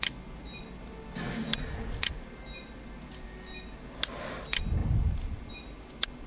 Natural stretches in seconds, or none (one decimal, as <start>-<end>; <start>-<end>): 0.0-6.3